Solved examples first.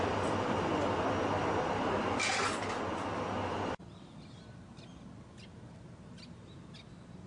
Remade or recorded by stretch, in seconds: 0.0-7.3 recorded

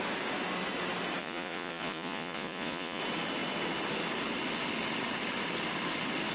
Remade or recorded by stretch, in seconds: 0.0-1.2 recorded; 1.2-3.0 remade; 3.0-6.3 recorded